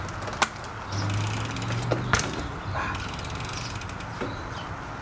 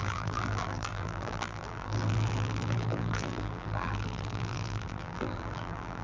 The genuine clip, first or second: first